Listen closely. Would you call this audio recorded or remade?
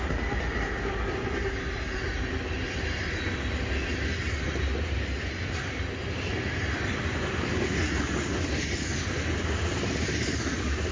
recorded